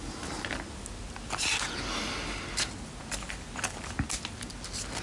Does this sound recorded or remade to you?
recorded